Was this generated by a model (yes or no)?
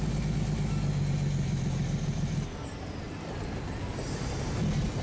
no